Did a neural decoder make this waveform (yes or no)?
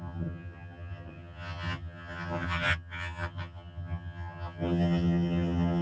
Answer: yes